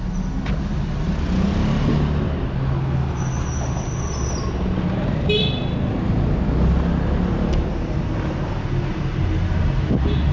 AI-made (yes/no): no